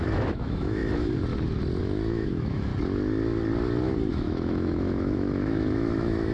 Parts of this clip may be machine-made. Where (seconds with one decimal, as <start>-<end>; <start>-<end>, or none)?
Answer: 0.0-0.8; 1.8-2.7; 4.1-6.3